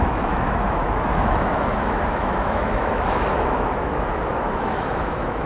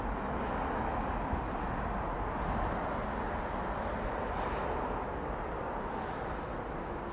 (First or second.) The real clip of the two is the second